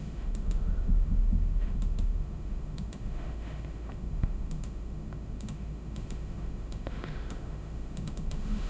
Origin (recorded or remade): remade